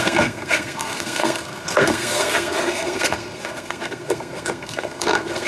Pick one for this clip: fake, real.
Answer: fake